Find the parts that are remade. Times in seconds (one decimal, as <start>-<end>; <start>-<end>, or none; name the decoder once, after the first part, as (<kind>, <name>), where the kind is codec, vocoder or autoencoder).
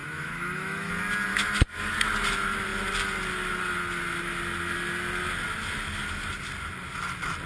0.0-0.9 (autoencoder, DAC-VAE); 1.3-1.9